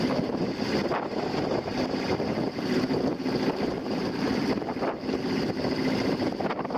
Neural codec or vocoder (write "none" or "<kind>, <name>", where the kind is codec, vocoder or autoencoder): none